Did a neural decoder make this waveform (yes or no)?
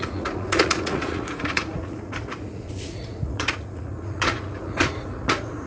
yes